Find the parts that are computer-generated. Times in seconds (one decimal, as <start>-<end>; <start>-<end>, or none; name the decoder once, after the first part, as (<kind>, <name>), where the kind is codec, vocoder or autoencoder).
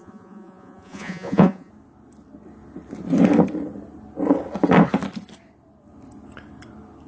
0.0-1.7 (vocoder, Vocos)